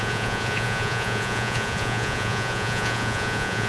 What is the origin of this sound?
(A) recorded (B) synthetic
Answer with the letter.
B